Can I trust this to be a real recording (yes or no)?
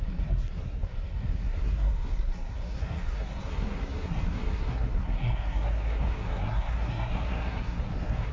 no